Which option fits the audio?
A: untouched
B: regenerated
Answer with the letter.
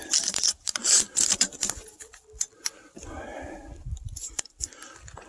B